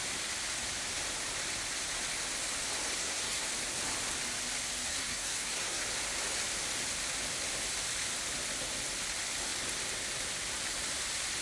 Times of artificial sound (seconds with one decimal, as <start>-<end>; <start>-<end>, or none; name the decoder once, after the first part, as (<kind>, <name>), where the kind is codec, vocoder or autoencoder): 3.0-3.5 (codec, SNAC); 4.9-5.8